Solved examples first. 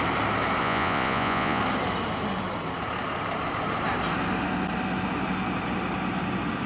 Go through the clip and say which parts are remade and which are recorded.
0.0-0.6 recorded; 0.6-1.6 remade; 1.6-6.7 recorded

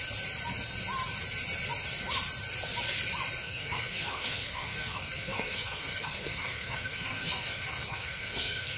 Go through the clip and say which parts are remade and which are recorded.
0.0-3.4 recorded; 3.4-8.8 remade

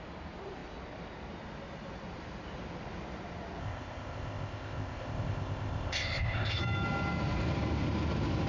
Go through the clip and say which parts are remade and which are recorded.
0.0-3.6 recorded; 3.6-6.6 remade; 6.6-8.5 recorded

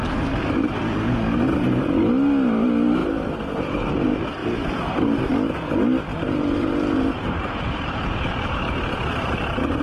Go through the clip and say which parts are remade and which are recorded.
0.0-4.4 recorded; 4.4-5.2 remade; 5.2-6.1 recorded; 6.1-9.8 remade

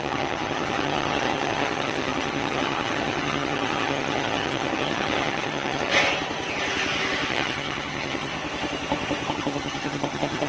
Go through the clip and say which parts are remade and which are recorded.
0.0-5.9 remade; 5.9-7.3 recorded; 7.3-8.3 remade; 8.3-9.3 recorded; 9.3-10.5 remade

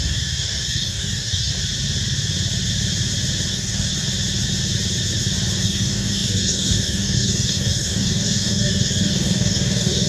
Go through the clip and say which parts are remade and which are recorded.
0.0-1.5 remade; 1.5-3.5 recorded; 3.5-3.9 remade; 3.9-5.6 recorded; 5.6-10.1 remade

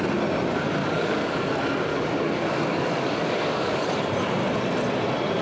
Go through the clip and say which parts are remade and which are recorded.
0.0-0.8 recorded; 0.8-1.5 remade; 1.5-1.9 recorded; 1.9-3.8 remade; 3.8-5.4 recorded

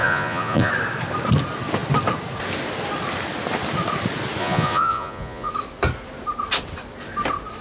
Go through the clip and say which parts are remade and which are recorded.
0.0-0.7 remade; 0.7-4.4 recorded; 4.4-5.5 remade; 5.5-7.6 recorded